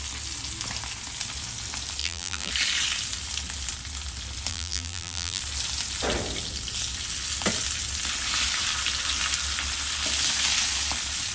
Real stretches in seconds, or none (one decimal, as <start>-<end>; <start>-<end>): 0.0-2.0; 2.5-4.5; 5.4-11.3